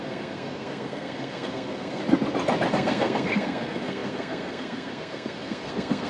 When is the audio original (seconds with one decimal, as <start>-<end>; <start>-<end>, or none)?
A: 2.0-2.7